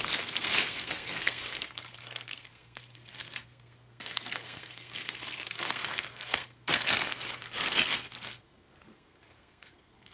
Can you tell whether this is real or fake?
fake